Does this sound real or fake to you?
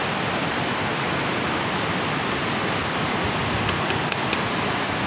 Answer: real